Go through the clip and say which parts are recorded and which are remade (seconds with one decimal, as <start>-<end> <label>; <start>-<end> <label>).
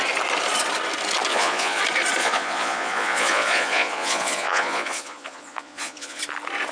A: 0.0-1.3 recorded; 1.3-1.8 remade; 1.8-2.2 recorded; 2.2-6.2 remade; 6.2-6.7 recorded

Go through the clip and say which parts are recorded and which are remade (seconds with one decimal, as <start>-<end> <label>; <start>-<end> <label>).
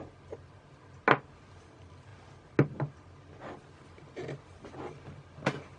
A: 0.0-5.8 recorded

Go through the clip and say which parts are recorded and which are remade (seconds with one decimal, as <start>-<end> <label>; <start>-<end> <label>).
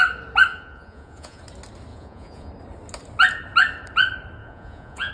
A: 0.0-0.5 recorded; 0.5-1.4 remade; 1.4-1.9 recorded; 1.9-2.5 remade; 2.5-4.4 recorded; 4.4-5.1 remade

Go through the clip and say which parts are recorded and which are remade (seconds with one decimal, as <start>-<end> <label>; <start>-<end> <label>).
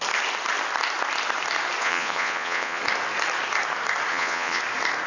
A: 0.0-1.8 recorded; 1.8-2.8 remade; 2.8-4.1 recorded; 4.1-4.6 remade; 4.6-5.1 recorded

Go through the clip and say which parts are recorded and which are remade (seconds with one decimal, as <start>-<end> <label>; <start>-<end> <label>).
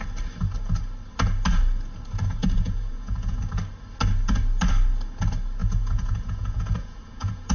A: 0.0-2.4 recorded; 2.4-3.4 remade; 3.4-5.6 recorded; 5.6-7.5 remade